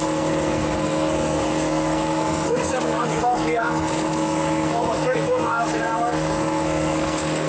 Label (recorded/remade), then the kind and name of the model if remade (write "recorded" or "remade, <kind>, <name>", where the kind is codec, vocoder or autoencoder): remade, codec, SNAC